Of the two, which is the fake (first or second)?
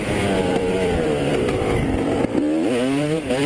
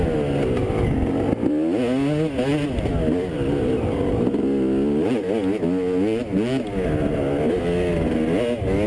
first